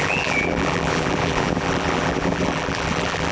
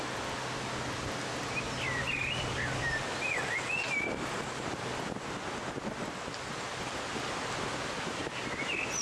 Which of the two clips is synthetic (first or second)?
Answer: first